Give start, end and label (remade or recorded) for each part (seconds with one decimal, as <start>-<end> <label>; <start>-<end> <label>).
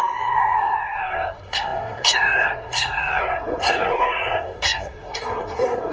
0.0-5.9 remade